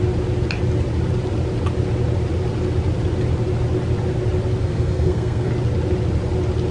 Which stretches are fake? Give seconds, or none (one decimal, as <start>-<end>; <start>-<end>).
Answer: 4.6-5.5